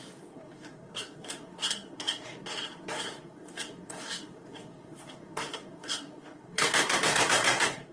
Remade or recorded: remade